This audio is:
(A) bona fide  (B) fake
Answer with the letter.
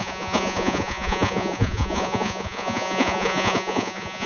B